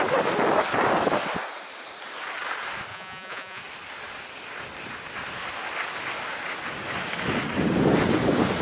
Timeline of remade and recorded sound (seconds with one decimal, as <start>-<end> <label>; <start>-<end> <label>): 0.0-2.9 recorded; 2.9-3.6 remade; 3.6-8.6 recorded